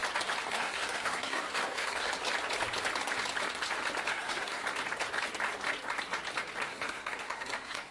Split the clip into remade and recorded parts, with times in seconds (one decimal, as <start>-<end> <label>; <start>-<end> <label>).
0.0-0.5 recorded; 0.5-2.1 remade; 2.1-4.1 recorded; 4.1-4.6 remade; 4.6-6.7 recorded; 6.7-7.9 remade